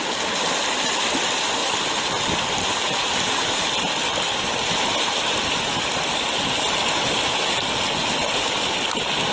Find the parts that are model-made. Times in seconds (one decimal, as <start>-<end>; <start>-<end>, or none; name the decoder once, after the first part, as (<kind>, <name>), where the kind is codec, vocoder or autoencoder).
1.6-3.9 (vocoder, BigVGAN v2); 8.0-8.7